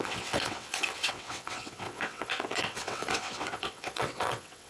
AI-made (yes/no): yes